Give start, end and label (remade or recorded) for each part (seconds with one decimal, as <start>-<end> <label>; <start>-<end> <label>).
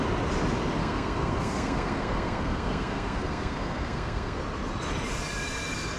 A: 0.0-0.8 recorded; 0.8-4.4 remade; 4.4-6.0 recorded